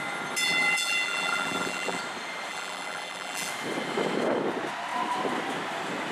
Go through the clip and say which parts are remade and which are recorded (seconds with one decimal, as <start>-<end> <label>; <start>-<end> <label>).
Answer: 0.0-0.4 recorded; 0.4-2.0 remade; 2.0-2.5 recorded; 2.5-3.5 remade; 3.5-6.1 recorded